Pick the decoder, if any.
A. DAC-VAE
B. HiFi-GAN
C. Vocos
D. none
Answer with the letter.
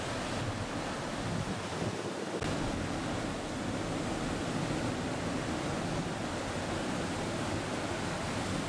D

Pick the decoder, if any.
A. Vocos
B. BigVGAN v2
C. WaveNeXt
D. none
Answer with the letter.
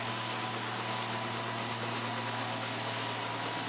D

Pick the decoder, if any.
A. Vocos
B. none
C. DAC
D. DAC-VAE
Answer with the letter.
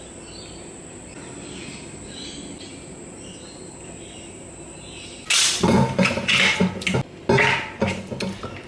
B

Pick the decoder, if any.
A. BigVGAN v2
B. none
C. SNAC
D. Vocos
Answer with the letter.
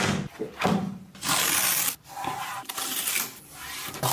B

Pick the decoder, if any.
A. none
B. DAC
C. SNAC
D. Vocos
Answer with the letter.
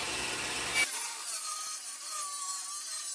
A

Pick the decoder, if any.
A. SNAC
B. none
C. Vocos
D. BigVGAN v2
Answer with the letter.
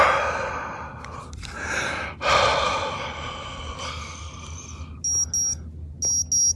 B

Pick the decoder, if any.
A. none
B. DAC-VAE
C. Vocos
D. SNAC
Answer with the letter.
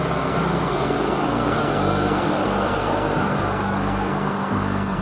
D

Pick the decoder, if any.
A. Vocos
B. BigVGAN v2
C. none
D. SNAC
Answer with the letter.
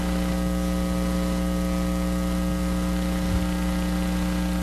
C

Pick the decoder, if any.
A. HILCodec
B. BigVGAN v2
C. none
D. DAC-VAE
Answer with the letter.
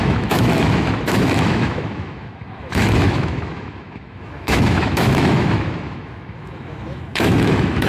D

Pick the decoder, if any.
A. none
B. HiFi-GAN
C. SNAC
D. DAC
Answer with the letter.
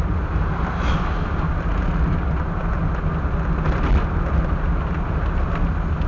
A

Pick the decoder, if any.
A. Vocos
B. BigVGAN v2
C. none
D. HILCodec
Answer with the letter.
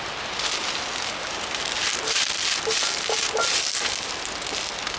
C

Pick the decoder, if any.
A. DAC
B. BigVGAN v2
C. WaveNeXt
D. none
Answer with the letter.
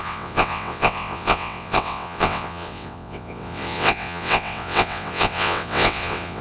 C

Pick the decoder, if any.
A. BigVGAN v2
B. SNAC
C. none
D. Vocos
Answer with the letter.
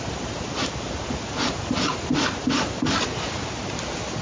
C